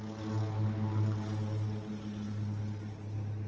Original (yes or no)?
yes